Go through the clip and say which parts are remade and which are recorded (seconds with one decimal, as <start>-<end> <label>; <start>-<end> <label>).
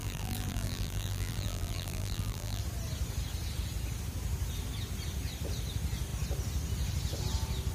0.0-2.6 remade; 2.6-7.7 recorded